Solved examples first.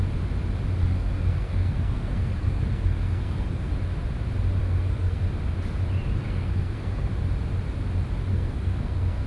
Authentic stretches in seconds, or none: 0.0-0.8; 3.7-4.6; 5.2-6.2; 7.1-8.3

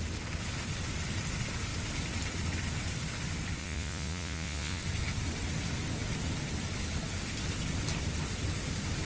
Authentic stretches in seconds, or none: 0.0-3.6; 4.8-9.0

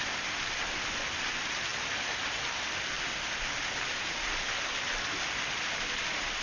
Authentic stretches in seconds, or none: 0.0-6.4